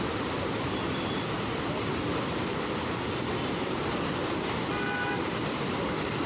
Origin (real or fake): fake